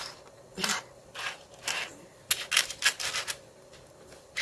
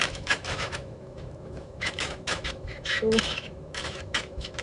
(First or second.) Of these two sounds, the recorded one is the first